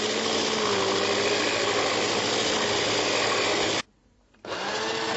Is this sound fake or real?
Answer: real